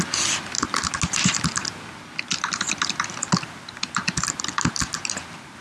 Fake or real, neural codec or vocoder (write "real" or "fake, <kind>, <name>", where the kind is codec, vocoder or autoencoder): real